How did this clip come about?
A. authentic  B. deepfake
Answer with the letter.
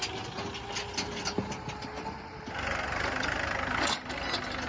A